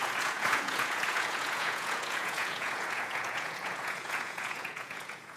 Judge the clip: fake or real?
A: fake